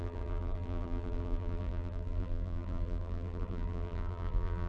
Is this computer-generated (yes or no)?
yes